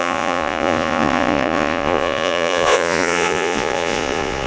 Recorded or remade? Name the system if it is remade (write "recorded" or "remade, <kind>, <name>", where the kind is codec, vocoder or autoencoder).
remade, vocoder, Vocos